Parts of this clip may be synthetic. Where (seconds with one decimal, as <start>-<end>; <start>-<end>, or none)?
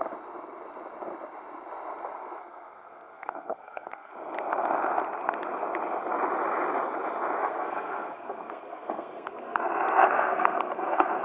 2.4-4.1; 7.4-11.2